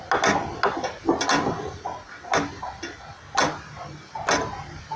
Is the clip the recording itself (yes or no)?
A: yes